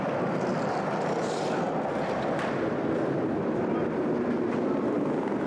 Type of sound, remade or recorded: recorded